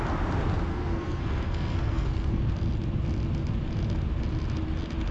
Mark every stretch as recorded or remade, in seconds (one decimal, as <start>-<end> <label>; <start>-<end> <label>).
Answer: 0.0-0.7 recorded; 0.7-2.4 remade; 2.4-5.1 recorded